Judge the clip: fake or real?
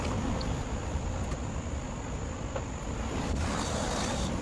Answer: real